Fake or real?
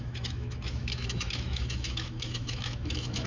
fake